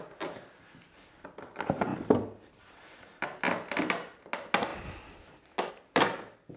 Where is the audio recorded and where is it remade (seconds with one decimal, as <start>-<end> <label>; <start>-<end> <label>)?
0.0-6.6 recorded